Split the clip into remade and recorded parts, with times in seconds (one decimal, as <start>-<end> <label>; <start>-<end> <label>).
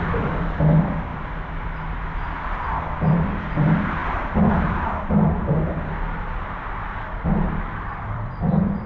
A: 0.0-1.1 remade; 1.1-2.6 recorded; 2.6-8.9 remade